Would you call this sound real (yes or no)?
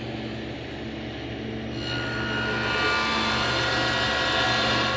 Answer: yes